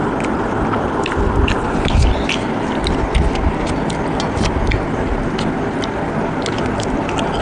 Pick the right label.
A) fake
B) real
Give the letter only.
B